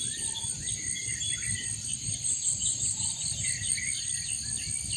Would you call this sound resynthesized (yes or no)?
no